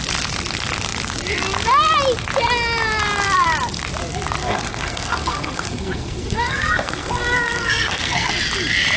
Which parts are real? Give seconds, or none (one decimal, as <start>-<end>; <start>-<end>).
0.0-4.4; 8.3-9.0